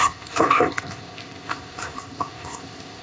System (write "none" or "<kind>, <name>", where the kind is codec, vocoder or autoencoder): codec, ZipCodec